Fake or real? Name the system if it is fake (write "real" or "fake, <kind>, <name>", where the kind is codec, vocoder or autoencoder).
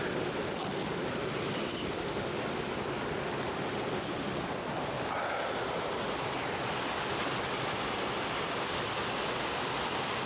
real